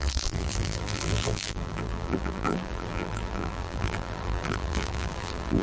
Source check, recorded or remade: remade